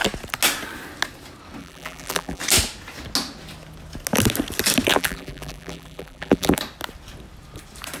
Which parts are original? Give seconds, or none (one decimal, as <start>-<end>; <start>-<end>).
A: 0.0-1.6; 2.4-4.9; 6.6-8.0